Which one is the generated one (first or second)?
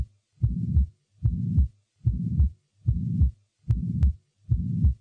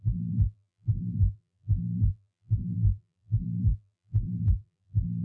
second